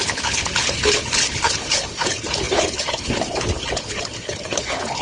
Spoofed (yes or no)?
yes